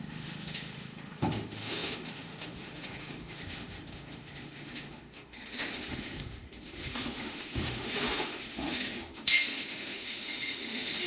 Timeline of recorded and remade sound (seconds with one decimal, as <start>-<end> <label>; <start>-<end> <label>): 0.0-11.1 remade